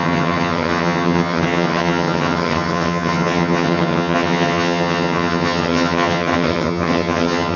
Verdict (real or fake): fake